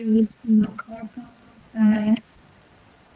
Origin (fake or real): fake